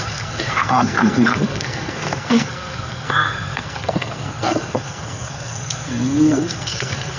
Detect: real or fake fake